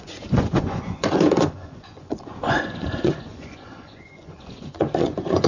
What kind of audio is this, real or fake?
fake